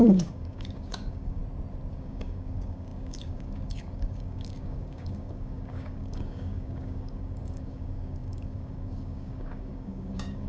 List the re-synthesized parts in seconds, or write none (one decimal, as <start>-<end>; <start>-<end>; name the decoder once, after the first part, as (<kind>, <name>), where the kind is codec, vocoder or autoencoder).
0.0-1.4 (codec, DAC); 1.9-10.5